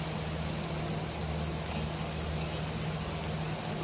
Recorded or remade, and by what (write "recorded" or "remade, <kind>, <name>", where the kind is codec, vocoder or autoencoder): recorded